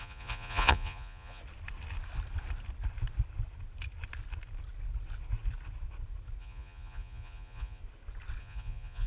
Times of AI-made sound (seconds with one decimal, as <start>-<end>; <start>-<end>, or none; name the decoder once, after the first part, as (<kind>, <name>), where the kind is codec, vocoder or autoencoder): 0.0-1.4 (vocoder, Vocos); 6.4-7.8; 8.4-9.1